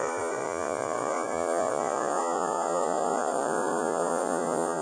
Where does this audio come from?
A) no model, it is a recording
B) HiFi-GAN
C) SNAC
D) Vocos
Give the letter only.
D